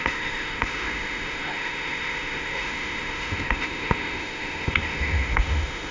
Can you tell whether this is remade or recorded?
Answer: remade